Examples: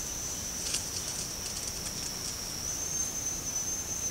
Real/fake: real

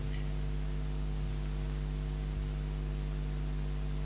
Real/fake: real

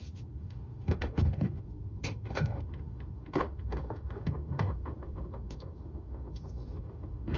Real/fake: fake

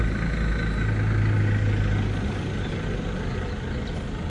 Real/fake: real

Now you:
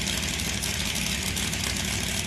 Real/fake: real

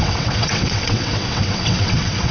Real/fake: fake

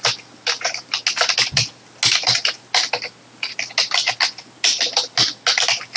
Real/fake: real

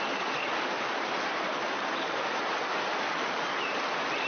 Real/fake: real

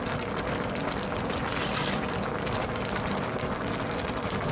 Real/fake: fake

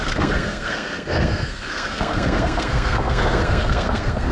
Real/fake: fake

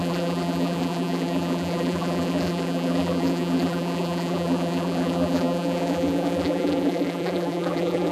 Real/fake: fake